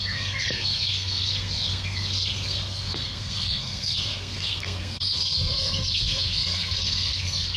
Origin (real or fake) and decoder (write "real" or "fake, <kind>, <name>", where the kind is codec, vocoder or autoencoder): fake, codec, SNAC